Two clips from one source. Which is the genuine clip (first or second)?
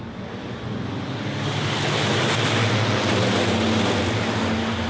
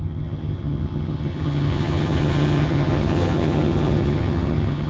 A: first